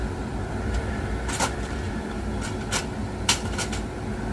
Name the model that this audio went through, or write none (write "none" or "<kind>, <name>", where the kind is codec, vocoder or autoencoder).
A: vocoder, BigVGAN v2